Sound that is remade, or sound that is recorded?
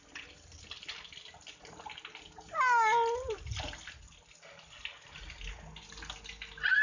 recorded